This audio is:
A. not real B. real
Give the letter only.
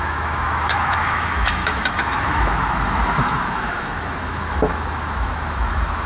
A